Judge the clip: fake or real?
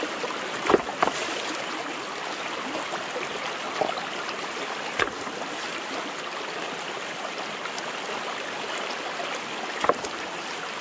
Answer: real